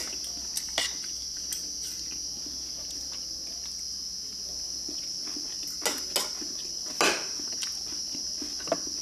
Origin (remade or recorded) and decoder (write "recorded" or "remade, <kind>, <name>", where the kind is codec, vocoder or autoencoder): recorded